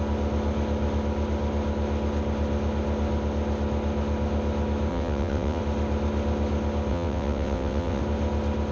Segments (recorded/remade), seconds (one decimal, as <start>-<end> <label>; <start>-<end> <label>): 0.0-4.9 recorded; 4.9-5.6 remade; 5.6-6.9 recorded; 6.9-8.0 remade; 8.0-8.7 recorded